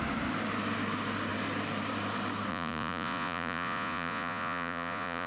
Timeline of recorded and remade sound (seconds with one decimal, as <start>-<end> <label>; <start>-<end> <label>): 0.0-2.5 recorded; 2.5-5.3 remade